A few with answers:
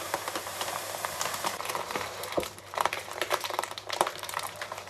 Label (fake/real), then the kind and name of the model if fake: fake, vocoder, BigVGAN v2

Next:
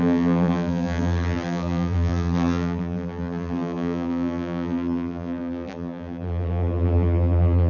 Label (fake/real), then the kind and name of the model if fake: fake, vocoder, BigVGAN v2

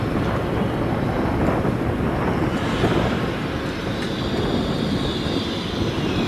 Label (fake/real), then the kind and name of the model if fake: real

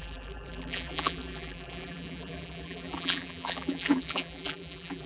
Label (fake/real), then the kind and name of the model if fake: fake, vocoder, BigVGAN v2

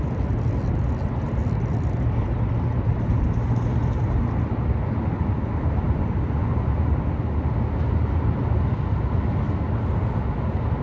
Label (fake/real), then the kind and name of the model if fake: real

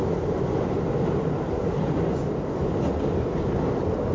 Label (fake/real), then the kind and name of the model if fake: real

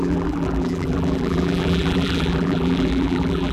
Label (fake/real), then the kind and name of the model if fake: fake, vocoder, BigVGAN v2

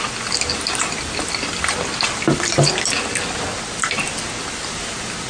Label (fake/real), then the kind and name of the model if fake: real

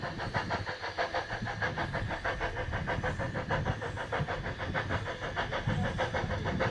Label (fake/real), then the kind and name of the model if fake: real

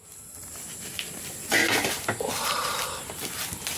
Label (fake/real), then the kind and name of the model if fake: real